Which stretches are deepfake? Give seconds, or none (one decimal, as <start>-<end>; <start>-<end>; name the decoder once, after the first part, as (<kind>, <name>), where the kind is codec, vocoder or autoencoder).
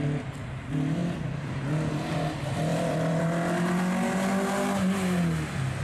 2.7-3.2 (vocoder, BigVGAN v2)